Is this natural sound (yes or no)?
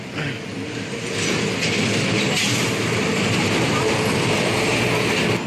yes